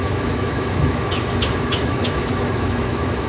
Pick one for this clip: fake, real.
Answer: fake